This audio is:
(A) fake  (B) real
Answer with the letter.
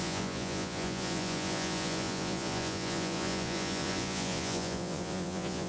A